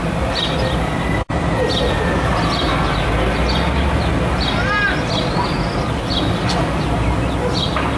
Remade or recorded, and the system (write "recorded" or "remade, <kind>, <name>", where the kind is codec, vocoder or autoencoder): recorded